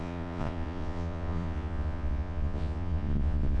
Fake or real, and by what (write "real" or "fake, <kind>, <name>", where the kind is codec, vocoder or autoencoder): fake, vocoder, Vocos